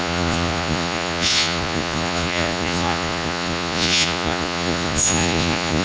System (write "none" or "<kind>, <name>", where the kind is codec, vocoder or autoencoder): vocoder, Vocos